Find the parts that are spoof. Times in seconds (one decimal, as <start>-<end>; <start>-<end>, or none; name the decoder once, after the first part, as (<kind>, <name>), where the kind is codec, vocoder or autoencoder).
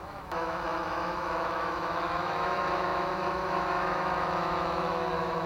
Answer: 0.0-5.5 (autoencoder, DAC-VAE)